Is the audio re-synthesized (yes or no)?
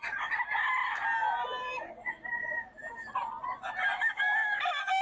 no